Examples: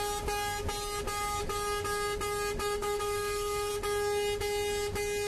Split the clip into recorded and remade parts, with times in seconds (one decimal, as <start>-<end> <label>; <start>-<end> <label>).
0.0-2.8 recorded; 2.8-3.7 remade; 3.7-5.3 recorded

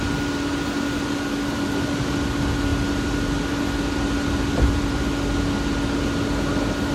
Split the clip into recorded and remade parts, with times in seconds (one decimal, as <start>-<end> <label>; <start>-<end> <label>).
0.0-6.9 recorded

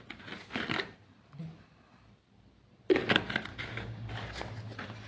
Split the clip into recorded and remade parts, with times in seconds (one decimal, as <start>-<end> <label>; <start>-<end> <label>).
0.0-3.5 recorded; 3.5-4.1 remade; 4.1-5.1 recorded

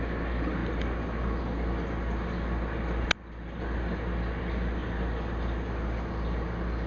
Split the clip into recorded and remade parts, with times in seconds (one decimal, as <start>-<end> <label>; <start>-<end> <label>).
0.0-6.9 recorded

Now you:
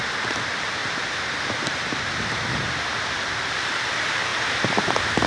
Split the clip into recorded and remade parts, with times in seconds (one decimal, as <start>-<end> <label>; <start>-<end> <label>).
0.0-0.8 recorded; 0.8-3.7 remade; 3.7-5.3 recorded

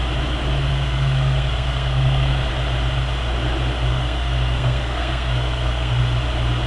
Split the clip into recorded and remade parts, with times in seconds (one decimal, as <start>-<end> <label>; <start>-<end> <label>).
0.0-0.7 recorded; 0.7-2.5 remade; 2.5-3.9 recorded; 3.9-6.0 remade; 6.0-6.7 recorded